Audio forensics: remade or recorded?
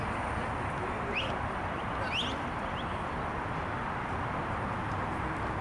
recorded